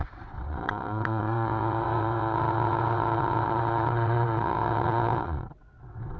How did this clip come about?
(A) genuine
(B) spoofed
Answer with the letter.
B